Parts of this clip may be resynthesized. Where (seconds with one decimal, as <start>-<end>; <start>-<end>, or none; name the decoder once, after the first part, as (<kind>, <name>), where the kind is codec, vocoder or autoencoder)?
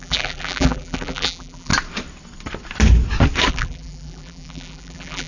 0.0-1.7 (vocoder, BigVGAN v2); 3.5-5.3